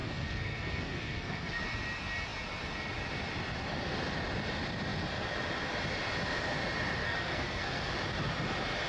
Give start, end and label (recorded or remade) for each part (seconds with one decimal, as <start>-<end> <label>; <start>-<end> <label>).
0.0-1.6 remade; 1.6-7.0 recorded; 7.0-7.9 remade; 7.9-8.9 recorded